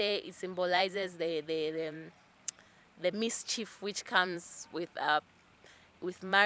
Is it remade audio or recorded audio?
remade